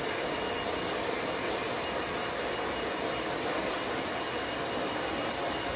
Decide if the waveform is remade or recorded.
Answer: recorded